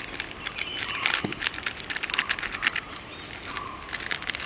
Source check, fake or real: real